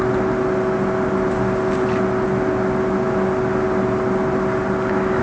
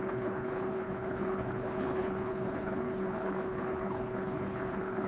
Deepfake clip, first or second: second